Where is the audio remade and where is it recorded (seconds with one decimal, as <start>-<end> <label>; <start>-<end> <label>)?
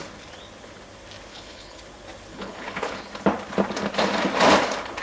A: 0.0-1.3 recorded; 1.3-1.8 remade; 1.8-2.3 recorded; 2.3-3.0 remade; 3.0-5.0 recorded